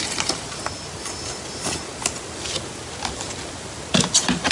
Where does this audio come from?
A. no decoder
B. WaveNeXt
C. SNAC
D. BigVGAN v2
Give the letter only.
A